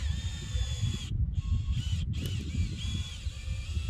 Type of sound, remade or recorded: recorded